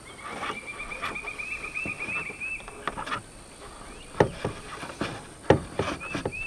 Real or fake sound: real